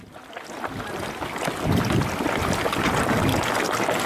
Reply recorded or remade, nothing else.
recorded